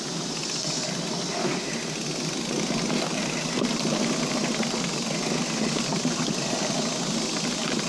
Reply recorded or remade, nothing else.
recorded